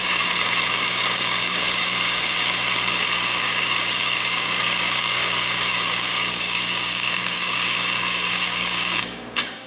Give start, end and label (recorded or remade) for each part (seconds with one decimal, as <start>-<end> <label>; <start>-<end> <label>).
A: 0.0-9.7 remade